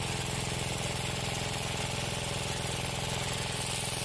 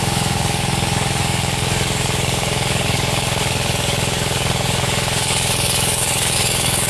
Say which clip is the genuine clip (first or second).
first